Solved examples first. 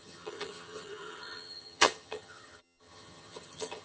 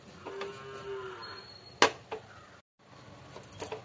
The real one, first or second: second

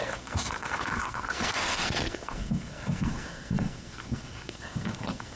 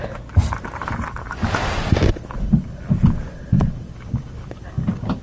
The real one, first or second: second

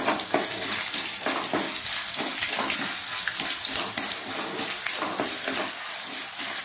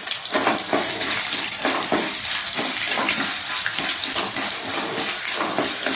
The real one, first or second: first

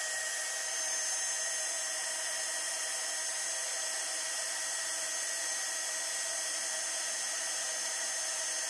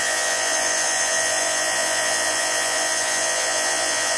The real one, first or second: first